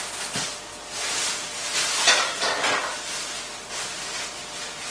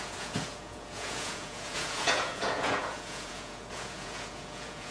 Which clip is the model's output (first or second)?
second